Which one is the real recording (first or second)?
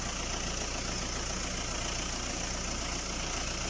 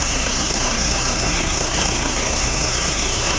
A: first